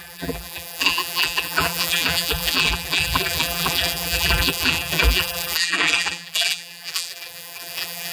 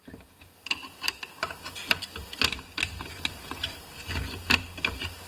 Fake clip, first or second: first